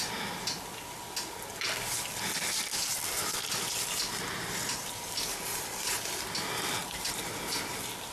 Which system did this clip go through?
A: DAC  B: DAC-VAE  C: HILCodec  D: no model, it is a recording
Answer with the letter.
D